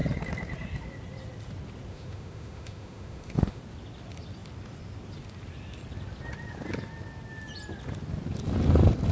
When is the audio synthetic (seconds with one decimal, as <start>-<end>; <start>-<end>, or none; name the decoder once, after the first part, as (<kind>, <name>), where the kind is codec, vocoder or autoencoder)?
1.9-3.6 (autoencoder, DAC-VAE)